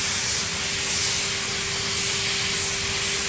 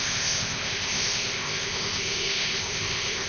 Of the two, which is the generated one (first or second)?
second